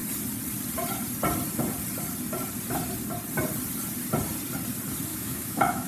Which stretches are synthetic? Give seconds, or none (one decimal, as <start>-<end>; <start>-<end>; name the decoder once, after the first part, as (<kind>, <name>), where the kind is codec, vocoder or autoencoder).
5.1-5.9 (autoencoder, DAC-VAE)